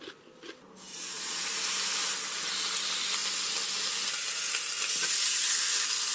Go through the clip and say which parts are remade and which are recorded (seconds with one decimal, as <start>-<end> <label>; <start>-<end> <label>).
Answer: 0.0-0.9 recorded; 0.9-1.4 remade; 1.4-6.1 recorded